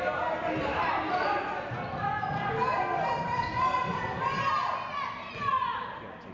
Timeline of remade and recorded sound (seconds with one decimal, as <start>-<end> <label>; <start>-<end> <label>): 0.0-6.3 recorded